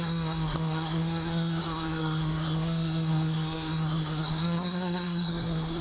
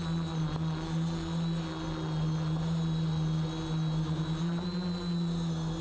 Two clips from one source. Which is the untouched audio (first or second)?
second